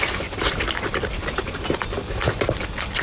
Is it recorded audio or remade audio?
remade